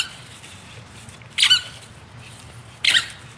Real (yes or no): yes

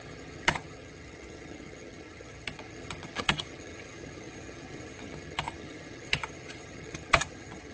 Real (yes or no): no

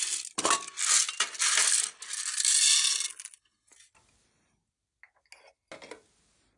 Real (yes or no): yes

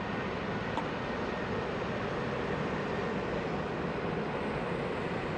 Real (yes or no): yes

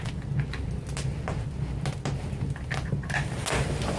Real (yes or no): yes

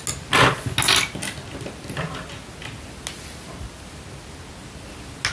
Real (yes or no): yes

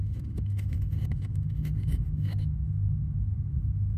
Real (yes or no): no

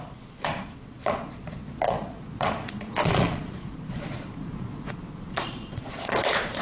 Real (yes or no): no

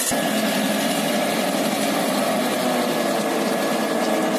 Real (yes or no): yes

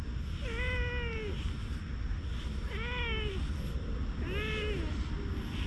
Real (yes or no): yes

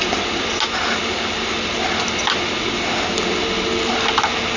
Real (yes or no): yes